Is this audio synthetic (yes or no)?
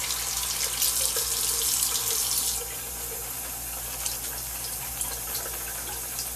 no